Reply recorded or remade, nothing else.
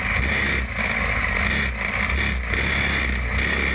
recorded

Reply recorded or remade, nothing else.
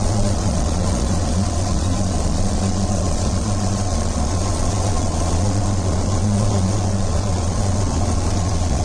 remade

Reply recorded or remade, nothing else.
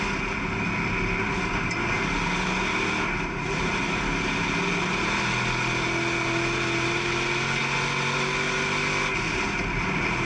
recorded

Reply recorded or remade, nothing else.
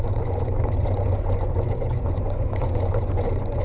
remade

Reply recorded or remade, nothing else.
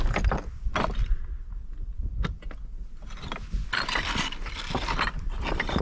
recorded